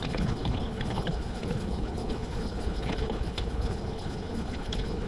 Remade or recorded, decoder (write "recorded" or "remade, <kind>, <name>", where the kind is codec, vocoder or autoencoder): remade, codec, HILCodec